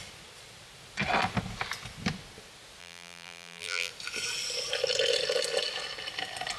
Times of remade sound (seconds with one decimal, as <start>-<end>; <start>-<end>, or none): 2.8-3.9